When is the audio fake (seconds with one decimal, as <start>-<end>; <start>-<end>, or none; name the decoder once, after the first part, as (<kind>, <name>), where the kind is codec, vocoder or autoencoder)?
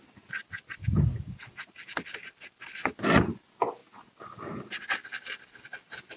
none